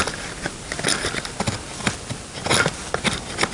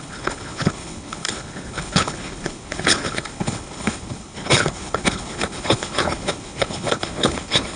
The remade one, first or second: second